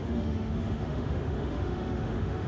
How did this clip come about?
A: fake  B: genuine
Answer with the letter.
A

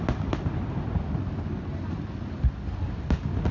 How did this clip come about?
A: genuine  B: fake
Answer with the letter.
A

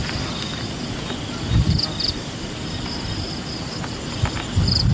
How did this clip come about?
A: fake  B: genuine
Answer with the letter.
B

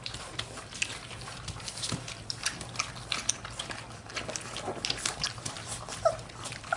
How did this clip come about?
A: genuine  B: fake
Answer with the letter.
A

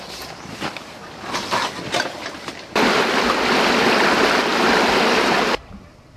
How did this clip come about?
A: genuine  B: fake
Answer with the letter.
A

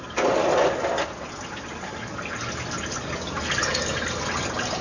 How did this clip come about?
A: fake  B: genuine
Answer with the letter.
B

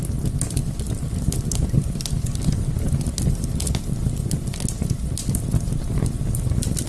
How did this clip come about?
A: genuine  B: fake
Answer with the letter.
A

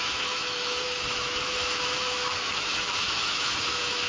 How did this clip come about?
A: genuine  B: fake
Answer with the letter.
B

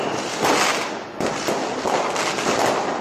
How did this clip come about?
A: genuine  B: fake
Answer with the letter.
A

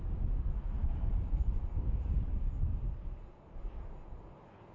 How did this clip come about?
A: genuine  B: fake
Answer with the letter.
A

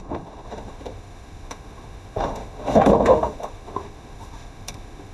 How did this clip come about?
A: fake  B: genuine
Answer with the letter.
A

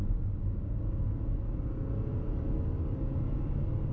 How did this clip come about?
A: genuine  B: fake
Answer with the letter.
A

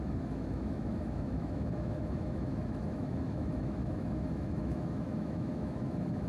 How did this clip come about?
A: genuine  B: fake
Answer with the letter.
B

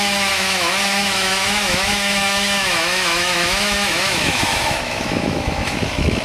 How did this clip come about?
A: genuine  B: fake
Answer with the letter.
B